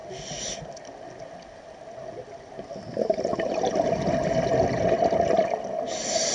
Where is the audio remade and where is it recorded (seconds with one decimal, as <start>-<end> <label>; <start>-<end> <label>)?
0.0-6.3 recorded